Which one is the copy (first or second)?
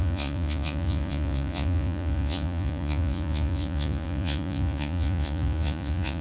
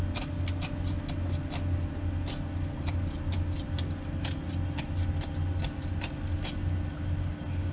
first